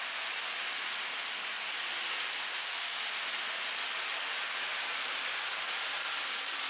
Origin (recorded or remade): recorded